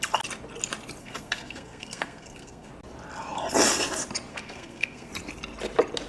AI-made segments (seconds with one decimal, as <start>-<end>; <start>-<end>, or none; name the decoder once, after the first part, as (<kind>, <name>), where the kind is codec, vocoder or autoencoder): 1.0-2.7 (codec, SNAC); 4.3-5.1